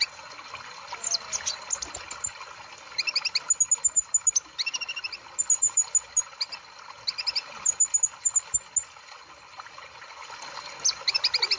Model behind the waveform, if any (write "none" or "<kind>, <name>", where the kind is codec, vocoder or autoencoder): none